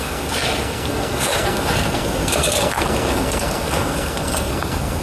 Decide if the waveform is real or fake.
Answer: fake